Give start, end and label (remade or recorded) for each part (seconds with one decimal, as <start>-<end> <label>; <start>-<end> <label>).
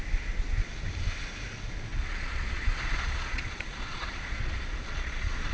0.0-1.9 recorded; 1.9-5.5 remade